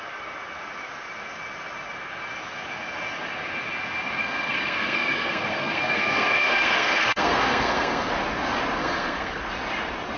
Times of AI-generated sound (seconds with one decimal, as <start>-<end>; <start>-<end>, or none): 4.2-8.1; 8.8-9.4